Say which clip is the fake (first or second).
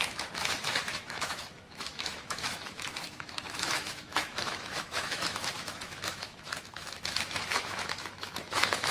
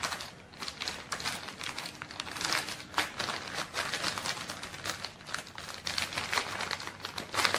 first